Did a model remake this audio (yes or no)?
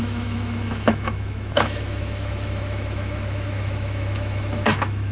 yes